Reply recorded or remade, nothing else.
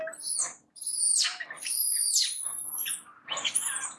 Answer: recorded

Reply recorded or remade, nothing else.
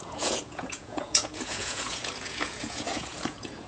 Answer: remade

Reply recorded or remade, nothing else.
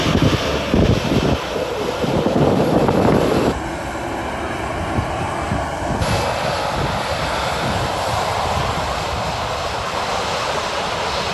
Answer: recorded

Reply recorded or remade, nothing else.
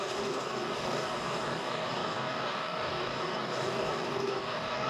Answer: remade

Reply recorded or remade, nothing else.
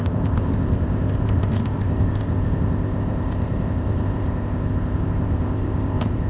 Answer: remade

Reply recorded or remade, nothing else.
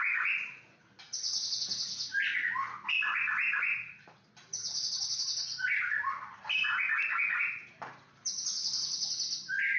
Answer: recorded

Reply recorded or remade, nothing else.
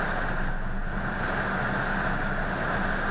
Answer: recorded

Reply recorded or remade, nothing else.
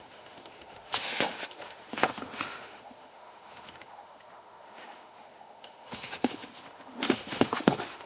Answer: remade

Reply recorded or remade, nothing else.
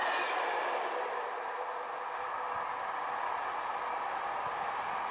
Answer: recorded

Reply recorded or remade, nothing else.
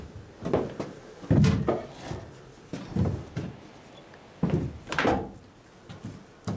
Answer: recorded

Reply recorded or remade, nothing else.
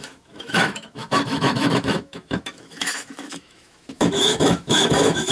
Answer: remade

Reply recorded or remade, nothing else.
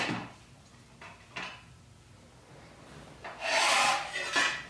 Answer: recorded